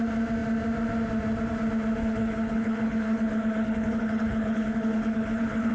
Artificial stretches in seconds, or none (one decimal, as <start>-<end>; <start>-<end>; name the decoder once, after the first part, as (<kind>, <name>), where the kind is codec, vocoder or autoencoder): 2.0-5.7 (codec, HILCodec)